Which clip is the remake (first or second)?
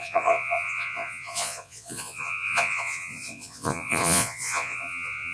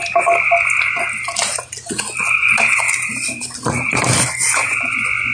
first